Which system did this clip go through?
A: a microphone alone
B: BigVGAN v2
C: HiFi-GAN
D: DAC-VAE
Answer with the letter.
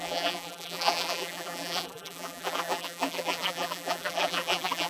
B